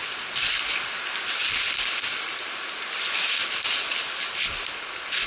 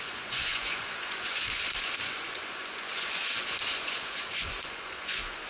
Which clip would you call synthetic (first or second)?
second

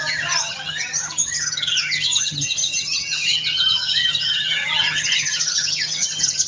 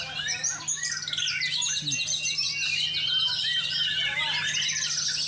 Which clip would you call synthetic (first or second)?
first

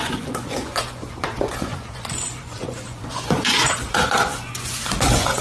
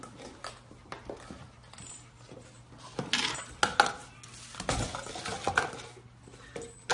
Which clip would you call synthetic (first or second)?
first